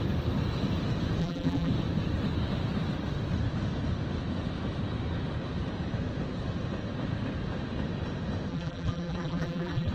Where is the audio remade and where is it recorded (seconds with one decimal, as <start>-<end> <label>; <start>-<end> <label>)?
0.0-1.2 recorded; 1.2-1.7 remade; 1.7-8.5 recorded; 8.5-9.9 remade